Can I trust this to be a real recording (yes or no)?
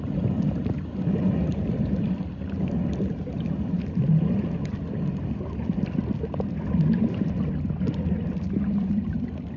yes